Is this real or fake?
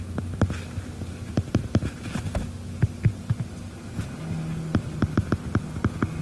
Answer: real